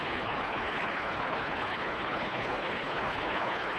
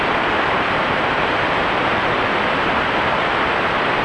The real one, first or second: second